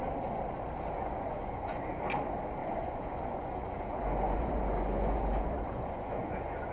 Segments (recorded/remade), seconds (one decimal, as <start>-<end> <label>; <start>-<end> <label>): 0.0-1.0 recorded; 1.0-1.9 remade; 1.9-2.6 recorded; 2.6-6.7 remade